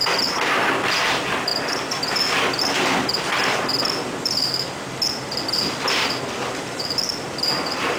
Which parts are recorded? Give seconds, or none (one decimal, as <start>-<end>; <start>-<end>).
0.0-1.5; 2.0-8.0